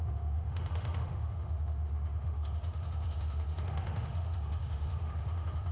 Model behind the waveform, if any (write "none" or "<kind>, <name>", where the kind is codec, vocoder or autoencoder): autoencoder, DAC-VAE